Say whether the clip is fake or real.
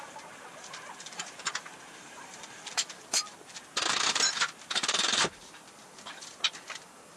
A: fake